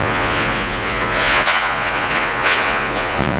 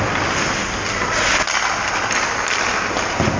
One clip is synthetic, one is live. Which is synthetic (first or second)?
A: first